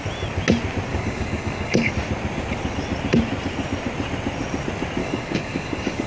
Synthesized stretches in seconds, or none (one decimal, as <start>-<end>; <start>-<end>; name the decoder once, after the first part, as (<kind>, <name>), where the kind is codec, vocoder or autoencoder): 0.9-1.9 (codec, DAC); 5.0-6.1